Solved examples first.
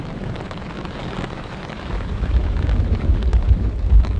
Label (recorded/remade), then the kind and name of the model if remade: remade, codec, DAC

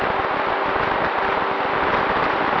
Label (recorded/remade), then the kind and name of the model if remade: recorded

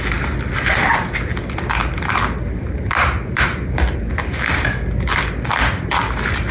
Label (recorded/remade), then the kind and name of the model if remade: recorded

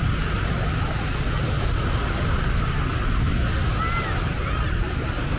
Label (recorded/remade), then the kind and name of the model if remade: recorded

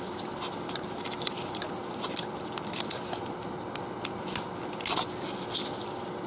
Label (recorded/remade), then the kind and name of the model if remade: recorded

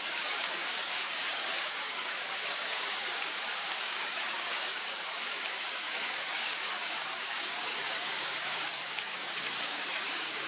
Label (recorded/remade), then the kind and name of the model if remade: remade, codec, DAC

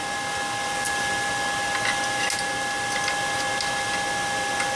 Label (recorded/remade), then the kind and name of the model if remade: recorded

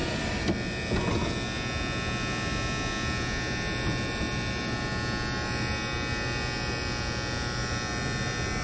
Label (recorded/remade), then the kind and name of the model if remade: recorded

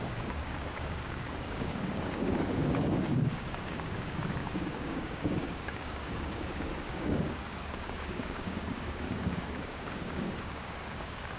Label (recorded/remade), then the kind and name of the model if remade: remade, codec, DAC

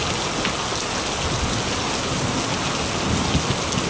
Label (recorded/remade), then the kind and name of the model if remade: recorded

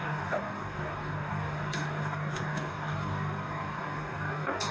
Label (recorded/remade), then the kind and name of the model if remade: remade, codec, DAC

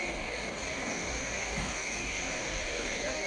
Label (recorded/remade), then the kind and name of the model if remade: remade, codec, DAC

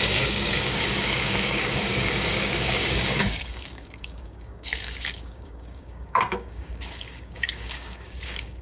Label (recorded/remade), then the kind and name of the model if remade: remade, codec, DAC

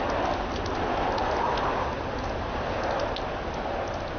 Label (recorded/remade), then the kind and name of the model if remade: recorded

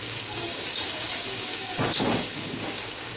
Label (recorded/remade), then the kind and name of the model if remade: remade, codec, DAC